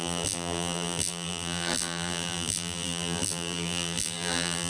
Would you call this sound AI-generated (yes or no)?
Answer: yes